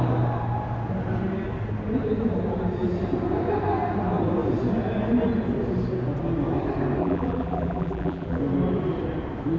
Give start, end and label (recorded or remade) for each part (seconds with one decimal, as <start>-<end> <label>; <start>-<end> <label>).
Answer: 0.0-7.0 recorded; 7.0-8.4 remade; 8.4-9.6 recorded